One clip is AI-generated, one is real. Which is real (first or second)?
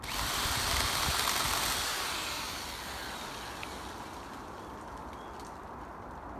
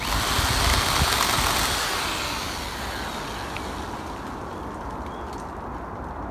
second